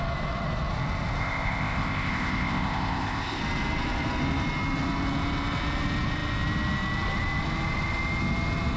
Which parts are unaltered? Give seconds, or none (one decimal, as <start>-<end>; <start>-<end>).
0.0-1.2; 3.4-8.8